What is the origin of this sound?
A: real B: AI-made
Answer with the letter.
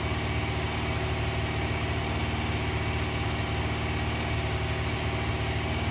A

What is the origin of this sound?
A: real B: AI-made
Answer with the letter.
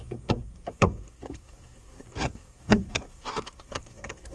B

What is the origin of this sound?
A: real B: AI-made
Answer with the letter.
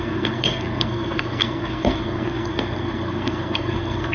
B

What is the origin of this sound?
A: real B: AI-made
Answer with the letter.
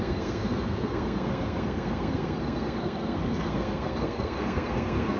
B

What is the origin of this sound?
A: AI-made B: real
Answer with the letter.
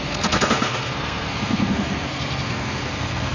A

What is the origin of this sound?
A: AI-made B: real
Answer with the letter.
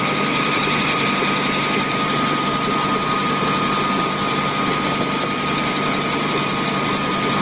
B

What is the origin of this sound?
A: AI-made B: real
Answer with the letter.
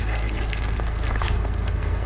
A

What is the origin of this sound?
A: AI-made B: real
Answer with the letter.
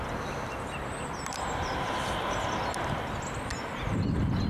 B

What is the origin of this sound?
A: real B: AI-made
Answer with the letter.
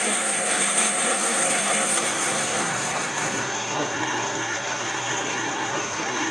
B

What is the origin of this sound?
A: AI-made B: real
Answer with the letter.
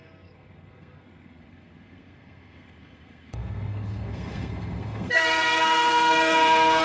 A